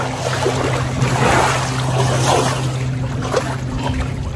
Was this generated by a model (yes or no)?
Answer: no